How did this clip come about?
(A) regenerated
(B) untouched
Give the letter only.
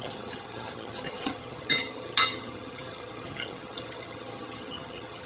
A